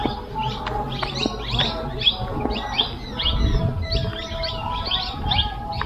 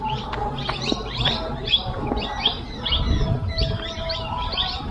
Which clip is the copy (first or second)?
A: second